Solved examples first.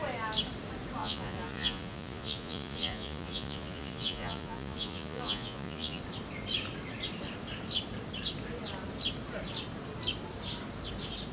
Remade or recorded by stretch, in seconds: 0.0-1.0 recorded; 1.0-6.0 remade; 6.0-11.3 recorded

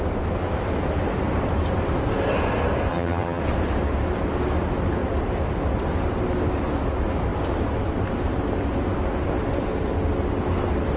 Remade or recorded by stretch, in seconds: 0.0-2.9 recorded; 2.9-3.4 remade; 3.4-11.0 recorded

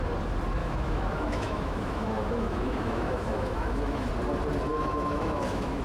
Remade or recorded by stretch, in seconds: 0.0-0.6 recorded; 0.6-4.1 remade; 4.1-4.7 recorded; 4.7-5.8 remade